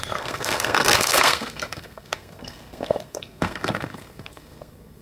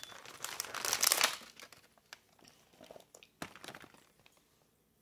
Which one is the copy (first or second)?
first